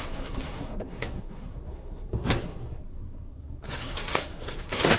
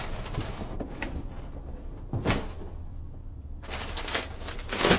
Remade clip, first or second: first